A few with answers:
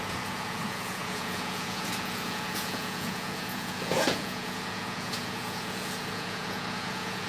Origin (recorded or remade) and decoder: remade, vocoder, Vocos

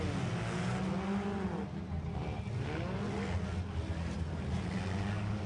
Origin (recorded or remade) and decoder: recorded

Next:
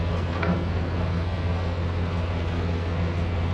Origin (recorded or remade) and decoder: remade, codec, SNAC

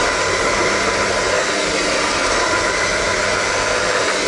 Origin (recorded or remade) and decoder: recorded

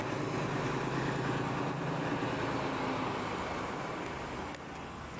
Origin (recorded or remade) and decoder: recorded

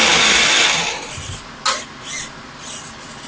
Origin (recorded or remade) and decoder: recorded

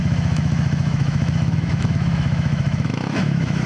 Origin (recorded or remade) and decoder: remade, autoencoder, DAC-VAE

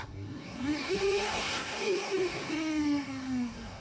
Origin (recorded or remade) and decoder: remade, codec, SNAC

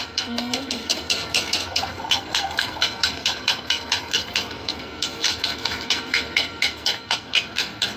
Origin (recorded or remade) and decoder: remade, codec, SNAC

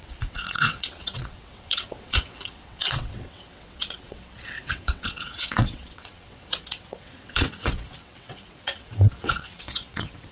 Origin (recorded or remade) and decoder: remade, vocoder, WaveNeXt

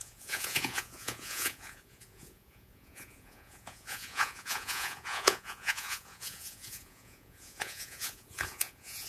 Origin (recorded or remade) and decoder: remade, vocoder, Vocos